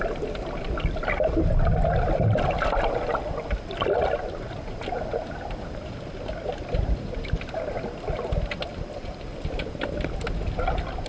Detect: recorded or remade recorded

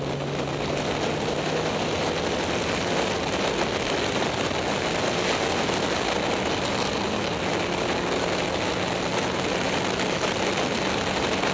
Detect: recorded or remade recorded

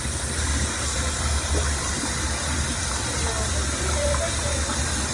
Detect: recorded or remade recorded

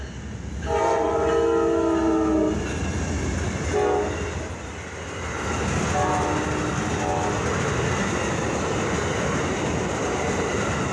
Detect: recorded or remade recorded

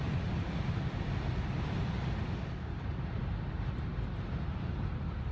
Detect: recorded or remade recorded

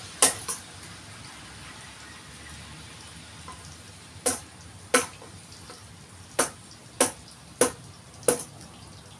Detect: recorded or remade recorded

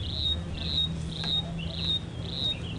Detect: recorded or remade recorded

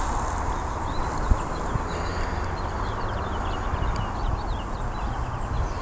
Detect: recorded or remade recorded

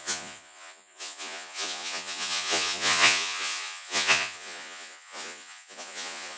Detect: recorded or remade remade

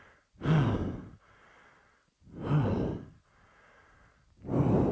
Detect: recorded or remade recorded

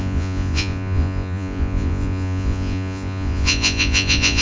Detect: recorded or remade remade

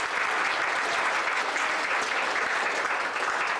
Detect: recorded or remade recorded